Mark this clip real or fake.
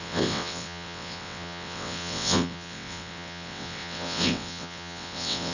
fake